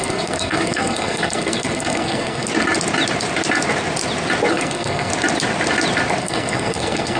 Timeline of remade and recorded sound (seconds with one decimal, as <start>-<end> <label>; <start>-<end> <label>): 0.0-2.5 remade; 2.5-4.5 recorded; 4.5-5.1 remade; 5.1-6.2 recorded; 6.2-7.2 remade